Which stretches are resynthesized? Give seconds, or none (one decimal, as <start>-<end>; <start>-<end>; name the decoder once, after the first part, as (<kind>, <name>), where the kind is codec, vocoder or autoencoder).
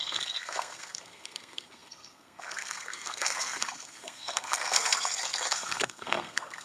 0.0-6.6 (codec, SNAC)